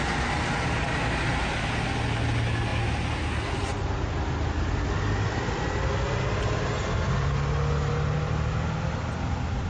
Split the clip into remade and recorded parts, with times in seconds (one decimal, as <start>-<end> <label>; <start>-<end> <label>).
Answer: 0.0-9.7 recorded

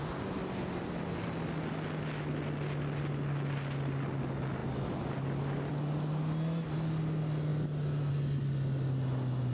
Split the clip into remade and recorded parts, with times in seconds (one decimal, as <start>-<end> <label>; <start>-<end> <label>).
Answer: 0.0-9.5 recorded

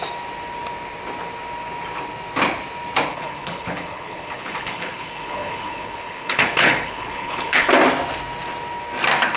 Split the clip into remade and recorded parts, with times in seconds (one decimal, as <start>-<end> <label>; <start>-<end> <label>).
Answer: 0.0-3.1 recorded; 3.1-7.7 remade; 7.7-9.4 recorded

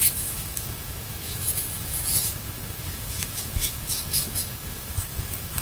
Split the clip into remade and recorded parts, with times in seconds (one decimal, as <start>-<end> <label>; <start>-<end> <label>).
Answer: 0.0-5.6 remade

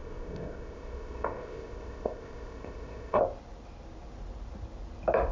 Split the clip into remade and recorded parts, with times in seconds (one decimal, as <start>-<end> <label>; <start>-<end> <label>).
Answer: 0.0-3.2 remade; 3.2-5.3 recorded

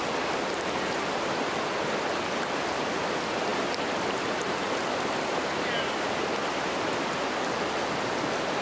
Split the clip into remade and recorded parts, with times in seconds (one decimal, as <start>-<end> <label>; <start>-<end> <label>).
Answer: 0.0-8.6 recorded

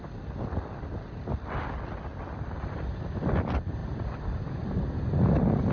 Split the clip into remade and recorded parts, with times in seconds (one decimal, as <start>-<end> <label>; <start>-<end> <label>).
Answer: 0.0-5.7 recorded

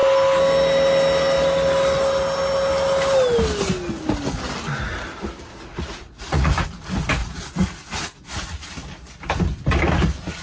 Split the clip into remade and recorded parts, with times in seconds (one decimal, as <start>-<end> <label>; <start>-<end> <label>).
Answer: 0.0-5.7 recorded; 5.7-6.5 remade; 6.5-7.2 recorded; 7.2-8.7 remade; 8.7-10.4 recorded